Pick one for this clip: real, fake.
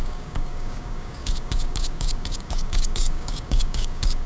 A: fake